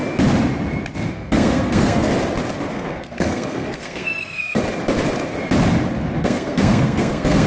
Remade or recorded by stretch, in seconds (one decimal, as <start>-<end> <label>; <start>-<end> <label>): 0.0-1.1 recorded; 1.1-2.1 remade; 2.1-2.7 recorded; 2.7-4.6 remade; 4.6-6.2 recorded; 6.2-7.5 remade